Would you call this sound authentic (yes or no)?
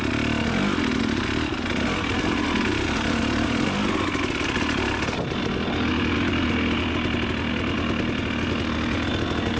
yes